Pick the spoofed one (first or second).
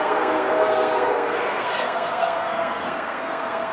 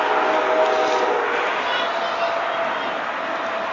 first